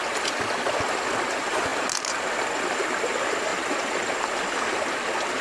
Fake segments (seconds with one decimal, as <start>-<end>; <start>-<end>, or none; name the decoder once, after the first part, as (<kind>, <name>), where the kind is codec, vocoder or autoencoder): none